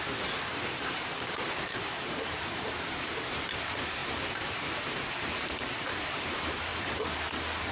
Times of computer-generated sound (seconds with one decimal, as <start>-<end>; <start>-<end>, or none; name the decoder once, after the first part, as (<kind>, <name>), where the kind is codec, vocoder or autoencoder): 0.0-6.7 (vocoder, BigVGAN v2)